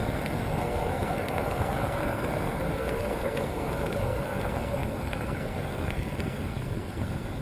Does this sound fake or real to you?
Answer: fake